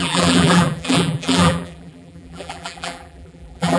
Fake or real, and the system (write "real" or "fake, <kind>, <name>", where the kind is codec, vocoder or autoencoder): fake, vocoder, BigVGAN v2